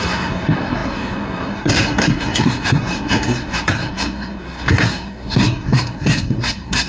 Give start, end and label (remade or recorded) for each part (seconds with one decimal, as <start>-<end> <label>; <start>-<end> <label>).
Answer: 0.0-6.9 remade